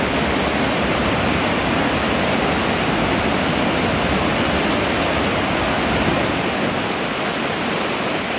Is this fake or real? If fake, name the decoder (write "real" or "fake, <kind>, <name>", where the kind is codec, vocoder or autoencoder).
real